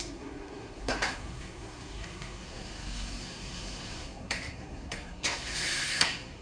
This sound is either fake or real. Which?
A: fake